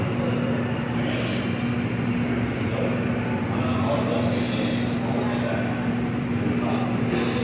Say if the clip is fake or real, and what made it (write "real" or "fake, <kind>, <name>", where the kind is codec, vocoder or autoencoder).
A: real